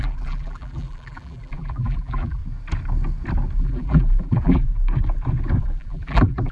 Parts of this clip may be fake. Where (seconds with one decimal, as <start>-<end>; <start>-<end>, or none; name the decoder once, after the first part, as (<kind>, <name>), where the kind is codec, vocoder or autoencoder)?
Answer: 0.0-2.4 (vocoder, BigVGAN v2); 3.6-4.7; 5.6-6.5